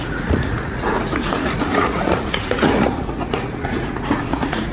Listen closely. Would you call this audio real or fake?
fake